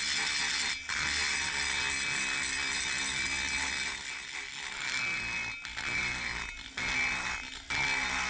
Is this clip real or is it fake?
real